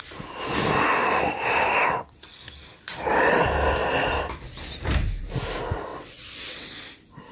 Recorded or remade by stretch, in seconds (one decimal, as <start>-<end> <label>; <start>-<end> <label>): 0.0-5.9 recorded; 5.9-6.7 remade; 6.7-7.3 recorded

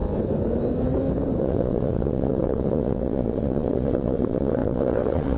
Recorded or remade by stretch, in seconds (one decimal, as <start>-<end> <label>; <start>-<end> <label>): 0.0-1.4 recorded; 1.4-5.4 remade

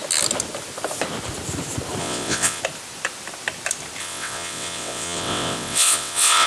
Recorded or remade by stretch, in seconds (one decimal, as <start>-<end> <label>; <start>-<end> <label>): 0.0-2.0 recorded; 2.0-2.6 remade; 2.6-4.0 recorded; 4.0-6.5 remade

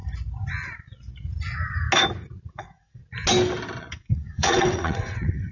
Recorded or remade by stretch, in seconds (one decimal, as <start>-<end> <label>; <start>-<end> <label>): 0.0-2.5 recorded; 2.5-3.0 remade; 3.0-3.8 recorded; 3.8-5.5 remade

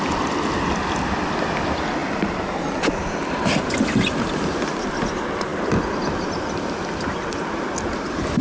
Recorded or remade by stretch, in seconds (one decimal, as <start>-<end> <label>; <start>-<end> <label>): 0.0-8.4 recorded

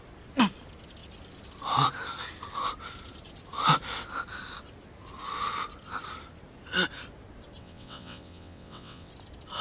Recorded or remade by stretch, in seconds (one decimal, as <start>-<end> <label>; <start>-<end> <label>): 0.0-7.6 recorded; 7.6-9.1 remade; 9.1-9.6 recorded

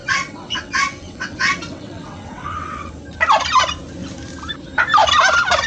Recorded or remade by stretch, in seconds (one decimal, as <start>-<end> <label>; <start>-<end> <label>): 0.0-2.9 remade; 2.9-5.7 recorded

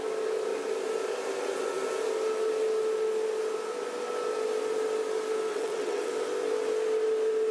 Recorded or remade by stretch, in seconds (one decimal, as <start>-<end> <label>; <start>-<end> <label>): 0.0-5.5 recorded; 5.5-6.1 remade; 6.1-7.5 recorded